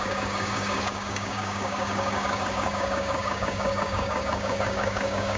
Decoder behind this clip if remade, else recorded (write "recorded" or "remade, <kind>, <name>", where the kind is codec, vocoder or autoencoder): remade, codec, DAC